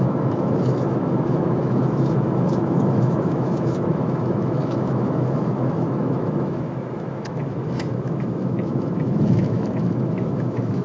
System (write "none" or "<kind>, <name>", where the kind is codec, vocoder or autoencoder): autoencoder, DAC-VAE